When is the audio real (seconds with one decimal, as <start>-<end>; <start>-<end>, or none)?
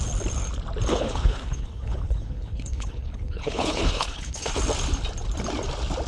0.0-0.9; 4.6-6.1